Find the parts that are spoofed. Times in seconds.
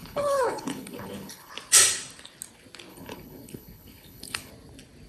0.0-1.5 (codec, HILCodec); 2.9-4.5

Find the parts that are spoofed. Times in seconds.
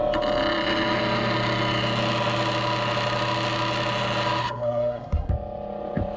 4.4-5.3 (codec, SNAC)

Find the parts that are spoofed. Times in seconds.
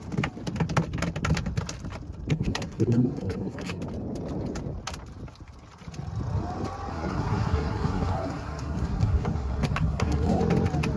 2.3-3.8 (codec, SNAC); 6.9-10.4